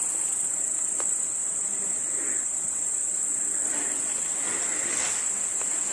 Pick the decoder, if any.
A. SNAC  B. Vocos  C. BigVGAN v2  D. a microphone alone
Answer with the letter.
D